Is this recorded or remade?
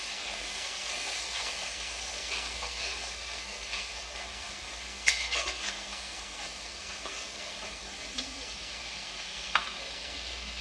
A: remade